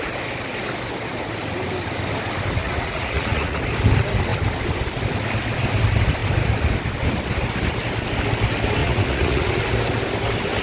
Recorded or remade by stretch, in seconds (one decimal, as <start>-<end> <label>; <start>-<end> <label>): 0.0-2.6 recorded; 2.6-3.6 remade; 3.6-8.8 recorded; 8.8-9.5 remade; 9.5-10.6 recorded